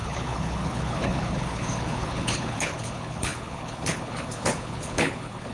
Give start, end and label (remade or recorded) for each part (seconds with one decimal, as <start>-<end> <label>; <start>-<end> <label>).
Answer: 0.0-5.5 remade